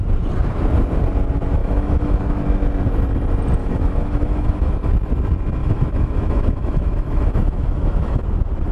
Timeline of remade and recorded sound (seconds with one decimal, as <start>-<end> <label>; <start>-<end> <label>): 0.0-1.6 recorded; 1.6-2.2 remade; 2.2-3.6 recorded; 3.6-4.9 remade; 4.9-5.6 recorded; 5.6-8.2 remade; 8.2-8.7 recorded